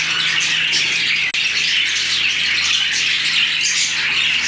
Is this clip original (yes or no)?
yes